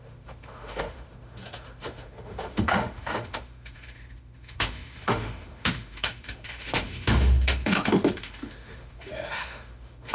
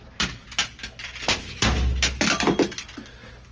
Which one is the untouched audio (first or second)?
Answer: second